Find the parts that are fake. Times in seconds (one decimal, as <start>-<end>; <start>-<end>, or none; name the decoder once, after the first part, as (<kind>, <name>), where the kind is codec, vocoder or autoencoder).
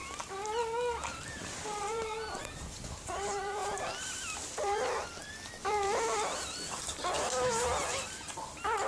1.2-2.4 (vocoder, BigVGAN v2); 3.1-8.9